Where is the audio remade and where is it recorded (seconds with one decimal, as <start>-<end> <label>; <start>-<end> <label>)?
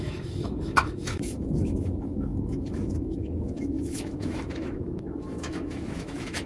0.0-6.5 remade